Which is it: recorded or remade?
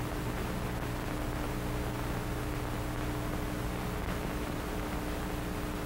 recorded